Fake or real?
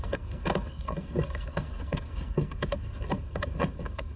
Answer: fake